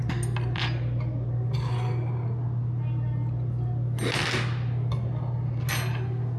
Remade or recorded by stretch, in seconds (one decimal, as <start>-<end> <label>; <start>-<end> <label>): 0.0-6.4 recorded